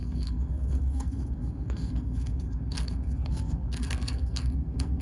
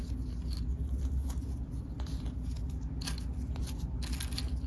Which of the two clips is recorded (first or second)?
second